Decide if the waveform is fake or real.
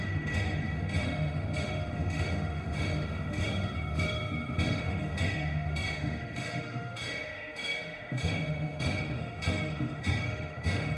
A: fake